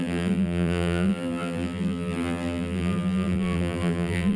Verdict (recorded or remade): remade